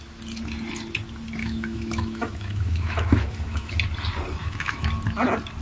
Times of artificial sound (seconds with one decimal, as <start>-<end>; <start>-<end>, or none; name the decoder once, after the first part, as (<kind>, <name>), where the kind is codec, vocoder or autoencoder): 1.4-3.7 (autoencoder, DAC-VAE); 4.4-4.9